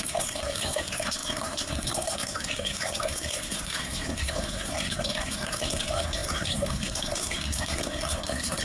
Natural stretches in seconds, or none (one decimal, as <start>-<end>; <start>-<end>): none